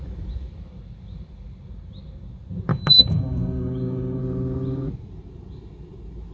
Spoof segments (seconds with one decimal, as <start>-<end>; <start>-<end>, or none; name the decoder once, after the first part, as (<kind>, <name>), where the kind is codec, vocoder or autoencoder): 2.7-4.2 (codec, DAC)

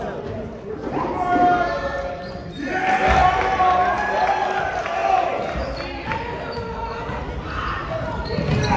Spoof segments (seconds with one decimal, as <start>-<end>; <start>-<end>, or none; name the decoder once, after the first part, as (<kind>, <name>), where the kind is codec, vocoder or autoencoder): none

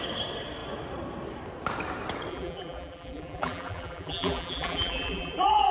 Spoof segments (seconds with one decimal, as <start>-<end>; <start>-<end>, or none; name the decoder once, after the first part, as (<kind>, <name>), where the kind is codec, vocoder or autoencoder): 2.3-5.7 (vocoder, BigVGAN v2)

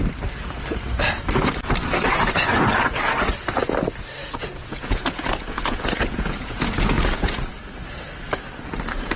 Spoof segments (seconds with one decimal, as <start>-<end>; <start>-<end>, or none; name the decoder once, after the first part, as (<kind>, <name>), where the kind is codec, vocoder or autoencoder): 4.2-7.5 (vocoder, Vocos)

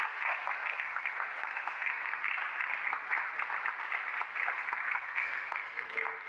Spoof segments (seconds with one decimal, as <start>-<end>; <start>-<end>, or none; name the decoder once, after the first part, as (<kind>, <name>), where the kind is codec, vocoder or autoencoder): 0.0-2.4 (codec, SNAC); 4.9-6.3

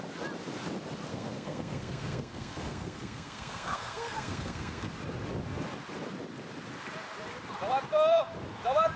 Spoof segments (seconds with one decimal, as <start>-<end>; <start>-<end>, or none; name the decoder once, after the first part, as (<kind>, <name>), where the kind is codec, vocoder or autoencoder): 1.1-4.9 (codec, SNAC)

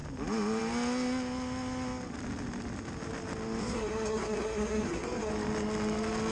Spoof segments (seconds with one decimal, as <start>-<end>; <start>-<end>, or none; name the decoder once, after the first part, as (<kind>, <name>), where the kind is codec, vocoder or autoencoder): 3.6-5.3 (codec, SNAC)

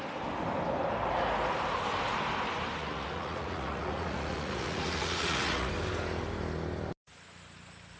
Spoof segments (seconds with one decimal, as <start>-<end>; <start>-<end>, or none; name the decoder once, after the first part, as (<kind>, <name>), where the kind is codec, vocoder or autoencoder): 2.8-5.7 (vocoder, Vocos)